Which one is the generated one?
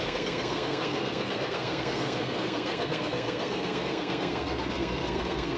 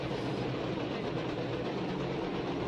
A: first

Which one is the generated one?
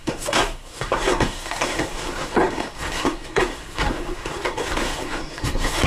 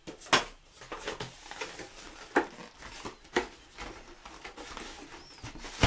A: first